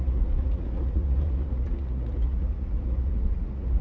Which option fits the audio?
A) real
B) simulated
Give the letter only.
B